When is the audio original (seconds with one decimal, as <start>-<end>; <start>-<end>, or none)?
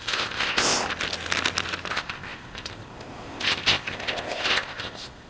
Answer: 0.8-1.9